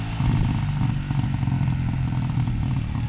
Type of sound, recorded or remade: recorded